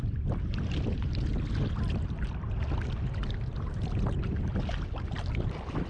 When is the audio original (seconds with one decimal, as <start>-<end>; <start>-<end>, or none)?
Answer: 0.0-5.9